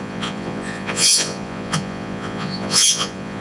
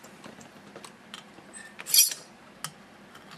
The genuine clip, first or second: second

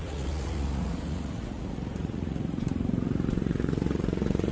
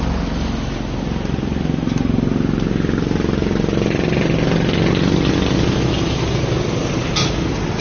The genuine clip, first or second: second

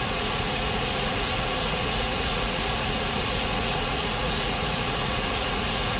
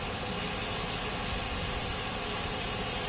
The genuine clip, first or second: second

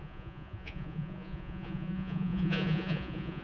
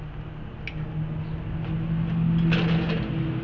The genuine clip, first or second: second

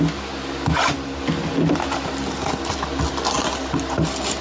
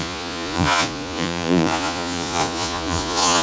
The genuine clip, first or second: first